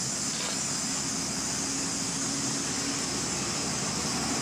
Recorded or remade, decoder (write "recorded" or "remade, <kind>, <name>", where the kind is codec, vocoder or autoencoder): recorded